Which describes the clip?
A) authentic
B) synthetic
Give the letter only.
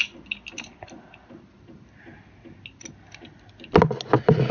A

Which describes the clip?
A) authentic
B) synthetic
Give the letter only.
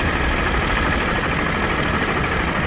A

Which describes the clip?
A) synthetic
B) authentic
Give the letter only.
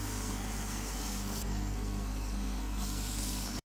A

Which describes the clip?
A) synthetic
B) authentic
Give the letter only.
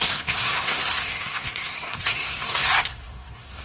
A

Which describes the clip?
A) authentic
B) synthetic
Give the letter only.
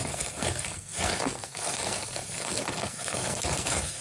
B